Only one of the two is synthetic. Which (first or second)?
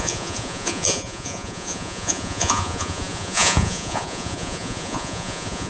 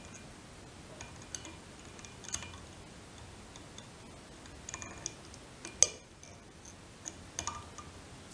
first